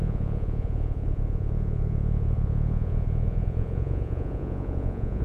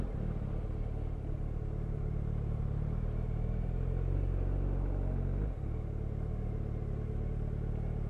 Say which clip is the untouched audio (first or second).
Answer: second